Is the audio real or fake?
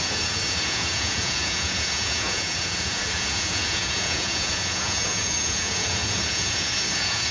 fake